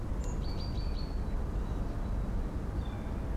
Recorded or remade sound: recorded